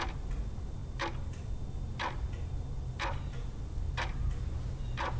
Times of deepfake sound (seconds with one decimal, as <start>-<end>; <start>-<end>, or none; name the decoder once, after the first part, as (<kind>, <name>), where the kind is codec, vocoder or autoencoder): none